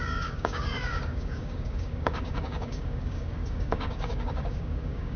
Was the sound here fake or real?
fake